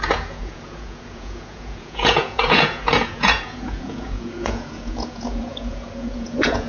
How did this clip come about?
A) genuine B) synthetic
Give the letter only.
B